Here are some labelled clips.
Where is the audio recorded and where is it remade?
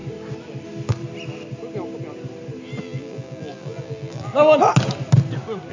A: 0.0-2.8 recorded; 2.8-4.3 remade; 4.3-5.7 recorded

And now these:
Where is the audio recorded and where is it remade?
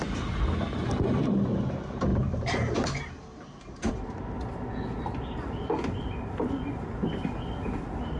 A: 0.0-2.1 recorded; 2.1-3.9 remade; 3.9-8.2 recorded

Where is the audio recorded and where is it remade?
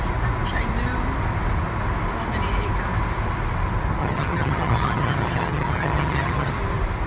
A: 0.0-4.0 recorded; 4.0-6.5 remade; 6.5-7.1 recorded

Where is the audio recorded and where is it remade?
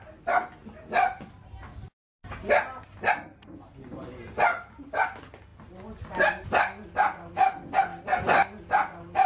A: 0.0-9.3 recorded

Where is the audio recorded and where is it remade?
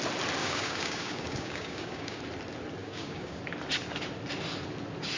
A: 0.0-0.4 recorded; 0.4-2.2 remade; 2.2-2.8 recorded; 2.8-3.4 remade; 3.4-5.2 recorded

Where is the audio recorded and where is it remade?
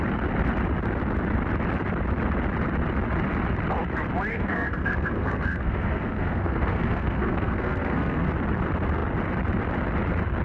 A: 0.0-4.3 recorded; 4.3-8.3 remade; 8.3-10.4 recorded